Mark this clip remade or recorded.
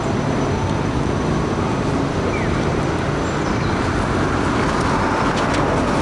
recorded